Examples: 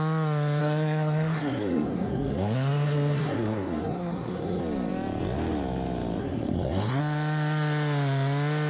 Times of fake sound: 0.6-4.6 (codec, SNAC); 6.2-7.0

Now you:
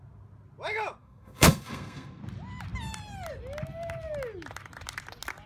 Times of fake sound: 1.0-2.2 (codec, SNAC)

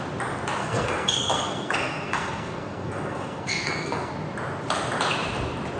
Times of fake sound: 0.6-4.1 (codec, SNAC)

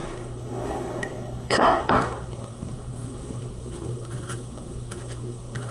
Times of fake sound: 0.0-5.7 (codec, SNAC)